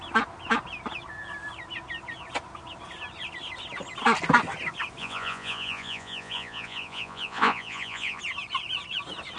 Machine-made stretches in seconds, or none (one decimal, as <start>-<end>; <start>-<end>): 5.0-8.2